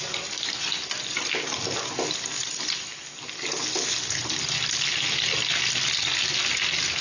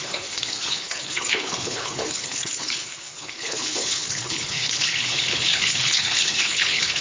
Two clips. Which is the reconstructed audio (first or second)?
second